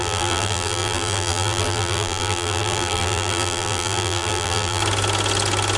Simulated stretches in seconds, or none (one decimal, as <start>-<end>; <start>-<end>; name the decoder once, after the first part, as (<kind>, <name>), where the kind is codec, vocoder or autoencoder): 0.0-4.8 (vocoder, BigVGAN v2)